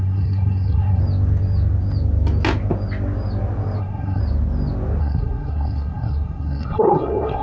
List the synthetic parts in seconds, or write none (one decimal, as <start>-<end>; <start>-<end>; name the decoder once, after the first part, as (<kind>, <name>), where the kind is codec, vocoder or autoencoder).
0.0-1.0 (codec, SNAC); 3.8-4.2; 5.0-7.4